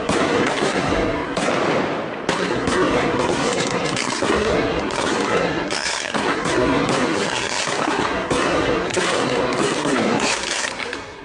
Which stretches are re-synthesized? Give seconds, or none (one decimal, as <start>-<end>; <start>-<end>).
0.0-1.5; 2.3-11.2